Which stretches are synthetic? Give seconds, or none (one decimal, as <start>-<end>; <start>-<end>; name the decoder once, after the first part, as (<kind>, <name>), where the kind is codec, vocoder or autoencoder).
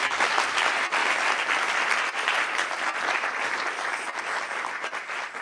none